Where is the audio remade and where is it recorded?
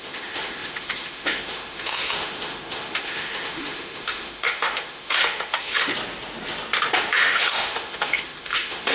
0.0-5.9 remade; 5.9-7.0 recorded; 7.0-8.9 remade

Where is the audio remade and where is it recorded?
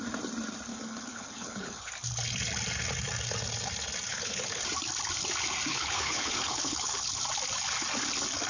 0.0-0.7 recorded; 0.7-1.9 remade; 1.9-4.1 recorded; 4.1-4.6 remade; 4.6-5.7 recorded; 5.7-7.1 remade; 7.1-8.5 recorded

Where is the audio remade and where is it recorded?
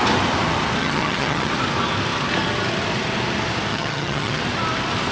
0.0-0.8 recorded; 0.8-1.5 remade; 1.5-3.7 recorded; 3.7-4.4 remade; 4.4-5.1 recorded